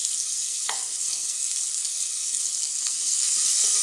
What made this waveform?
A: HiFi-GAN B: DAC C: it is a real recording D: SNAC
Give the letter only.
D